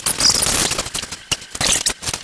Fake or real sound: real